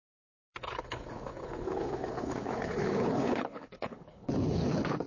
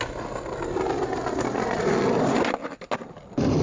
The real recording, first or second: second